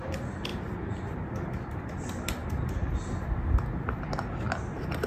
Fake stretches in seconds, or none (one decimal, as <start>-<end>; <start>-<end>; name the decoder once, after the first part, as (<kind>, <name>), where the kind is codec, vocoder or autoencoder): none